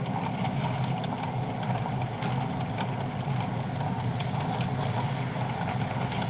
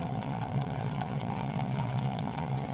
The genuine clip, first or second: first